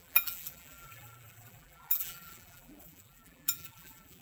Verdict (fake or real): fake